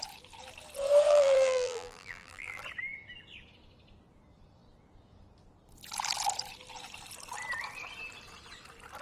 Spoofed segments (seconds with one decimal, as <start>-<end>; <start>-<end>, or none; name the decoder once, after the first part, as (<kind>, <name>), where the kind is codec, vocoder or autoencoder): 1.1-2.6 (vocoder, BigVGAN v2)